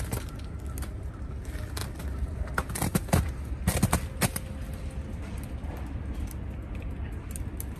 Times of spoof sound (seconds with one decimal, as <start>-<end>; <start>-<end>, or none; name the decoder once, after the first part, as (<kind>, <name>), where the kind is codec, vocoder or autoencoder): none